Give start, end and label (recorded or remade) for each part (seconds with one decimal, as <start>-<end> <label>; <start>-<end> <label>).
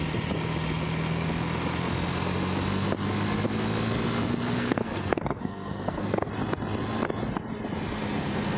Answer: 0.0-4.6 recorded; 4.6-6.3 remade; 6.3-8.6 recorded